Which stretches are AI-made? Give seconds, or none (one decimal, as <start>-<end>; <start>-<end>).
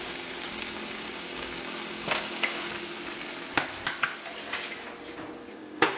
0.0-2.7; 5.5-6.0